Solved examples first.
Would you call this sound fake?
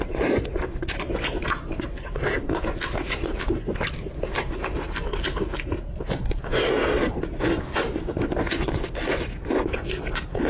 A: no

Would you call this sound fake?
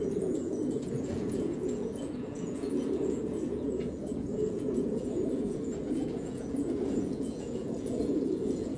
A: yes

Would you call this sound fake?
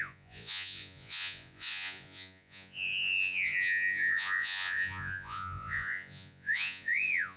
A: yes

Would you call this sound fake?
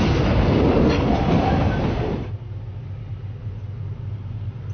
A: no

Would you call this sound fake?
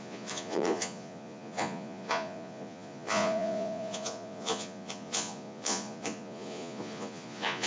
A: yes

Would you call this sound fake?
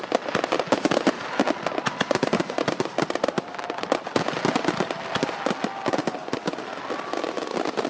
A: no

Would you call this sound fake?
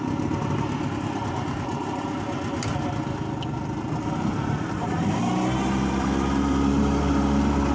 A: no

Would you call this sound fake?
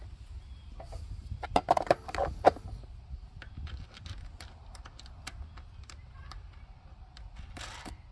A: no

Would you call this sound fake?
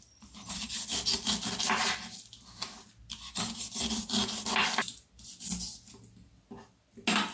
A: no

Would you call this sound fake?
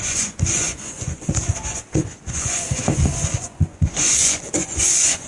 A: yes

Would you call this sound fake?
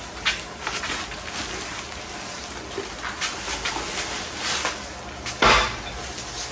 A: no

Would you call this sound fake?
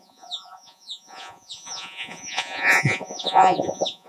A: yes